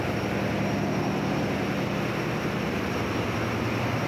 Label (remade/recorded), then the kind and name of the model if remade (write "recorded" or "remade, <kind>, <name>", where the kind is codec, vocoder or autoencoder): recorded